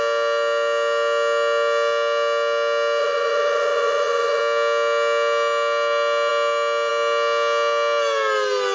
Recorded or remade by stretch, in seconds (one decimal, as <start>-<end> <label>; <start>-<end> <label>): 0.0-3.0 recorded; 3.0-4.4 remade; 4.4-8.7 recorded